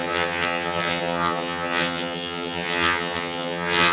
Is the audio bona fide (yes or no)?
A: no